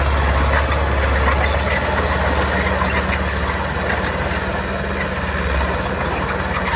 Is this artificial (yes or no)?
no